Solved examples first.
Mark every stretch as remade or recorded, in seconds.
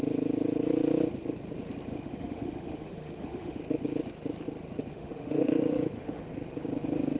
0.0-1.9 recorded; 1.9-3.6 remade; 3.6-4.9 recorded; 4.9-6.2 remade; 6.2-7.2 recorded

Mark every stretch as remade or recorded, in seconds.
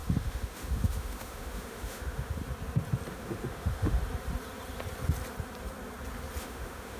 0.0-2.4 remade; 2.4-3.1 recorded; 3.1-4.0 remade; 4.0-6.4 recorded; 6.4-7.0 remade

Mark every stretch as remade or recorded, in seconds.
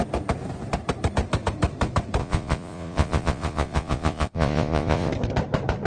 0.0-2.2 recorded; 2.2-5.1 remade; 5.1-5.9 recorded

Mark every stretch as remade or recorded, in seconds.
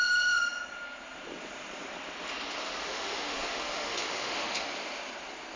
0.0-2.9 recorded; 2.9-4.7 remade; 4.7-5.6 recorded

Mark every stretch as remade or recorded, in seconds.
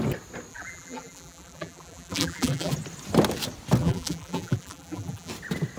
0.0-0.5 recorded; 0.5-2.7 remade; 2.7-3.8 recorded; 3.8-5.3 remade; 5.3-5.8 recorded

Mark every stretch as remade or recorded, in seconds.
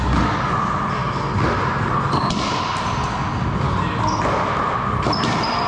0.0-5.7 recorded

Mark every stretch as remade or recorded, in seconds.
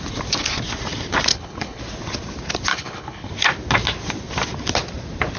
0.0-1.3 recorded; 1.3-1.8 remade; 1.8-2.7 recorded; 2.7-3.3 remade; 3.3-5.4 recorded